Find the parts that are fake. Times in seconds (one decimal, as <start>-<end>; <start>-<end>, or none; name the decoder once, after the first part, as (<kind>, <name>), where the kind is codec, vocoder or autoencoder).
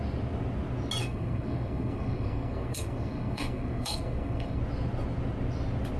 1.0-4.6 (codec, SNAC)